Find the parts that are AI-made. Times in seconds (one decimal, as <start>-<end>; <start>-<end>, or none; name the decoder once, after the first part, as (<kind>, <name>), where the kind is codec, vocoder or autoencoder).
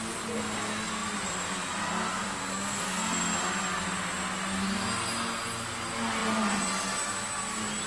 1.0-1.9 (vocoder, BigVGAN v2); 6.2-7.0